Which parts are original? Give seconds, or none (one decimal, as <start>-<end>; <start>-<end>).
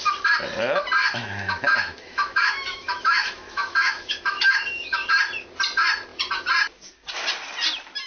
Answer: 0.0-1.0; 5.1-8.1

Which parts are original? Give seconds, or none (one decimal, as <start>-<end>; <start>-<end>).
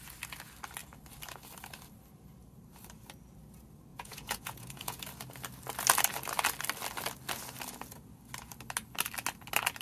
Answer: 0.0-3.9; 5.0-9.8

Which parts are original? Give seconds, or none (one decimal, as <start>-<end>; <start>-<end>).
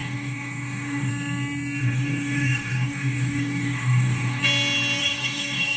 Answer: 1.1-1.8; 4.4-5.0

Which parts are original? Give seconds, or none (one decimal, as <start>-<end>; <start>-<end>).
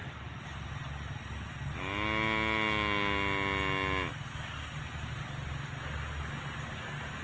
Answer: 0.0-7.2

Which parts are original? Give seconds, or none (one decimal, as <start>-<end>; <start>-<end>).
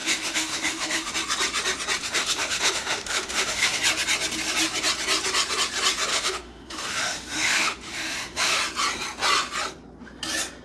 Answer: 1.1-2.0; 3.8-6.1; 8.6-10.6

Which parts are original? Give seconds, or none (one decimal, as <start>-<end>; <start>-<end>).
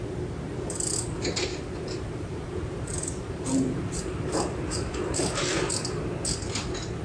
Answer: 0.0-1.5; 5.7-7.0